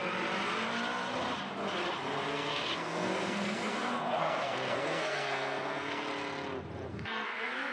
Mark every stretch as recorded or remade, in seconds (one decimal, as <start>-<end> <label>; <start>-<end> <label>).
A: 0.0-2.3 recorded; 2.3-6.1 remade; 6.1-6.9 recorded; 6.9-7.7 remade